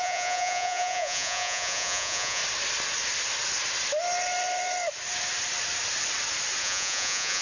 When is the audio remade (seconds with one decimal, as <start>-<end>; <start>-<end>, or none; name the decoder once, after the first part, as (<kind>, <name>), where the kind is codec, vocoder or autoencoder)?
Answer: 0.0-2.4 (vocoder, Vocos); 6.6-7.4